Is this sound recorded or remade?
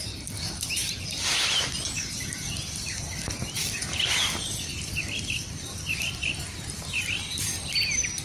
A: recorded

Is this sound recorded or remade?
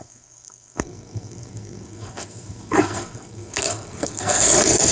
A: remade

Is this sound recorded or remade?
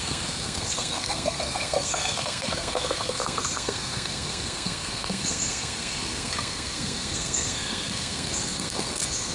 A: remade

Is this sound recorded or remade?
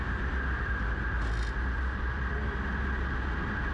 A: recorded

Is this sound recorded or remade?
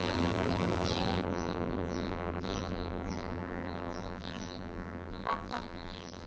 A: remade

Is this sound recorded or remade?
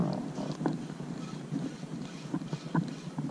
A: recorded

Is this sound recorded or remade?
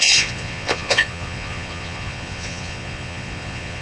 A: remade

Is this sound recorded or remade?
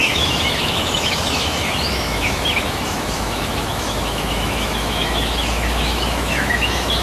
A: remade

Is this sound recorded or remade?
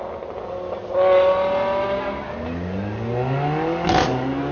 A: recorded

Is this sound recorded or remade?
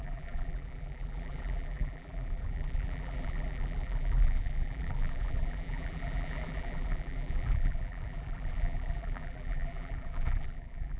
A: remade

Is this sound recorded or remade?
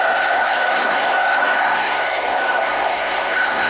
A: remade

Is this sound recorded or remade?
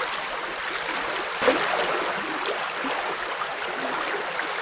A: recorded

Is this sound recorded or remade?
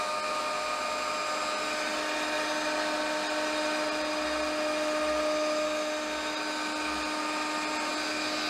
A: recorded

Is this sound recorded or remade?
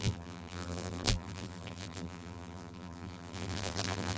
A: remade